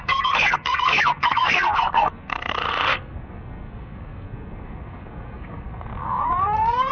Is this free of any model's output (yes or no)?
no